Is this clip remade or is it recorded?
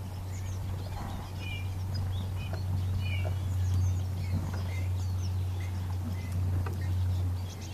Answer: recorded